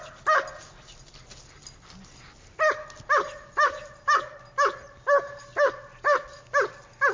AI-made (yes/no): no